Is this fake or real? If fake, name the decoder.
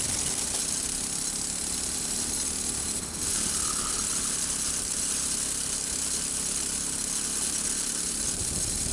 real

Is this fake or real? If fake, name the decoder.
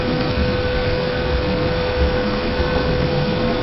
fake, codec, SNAC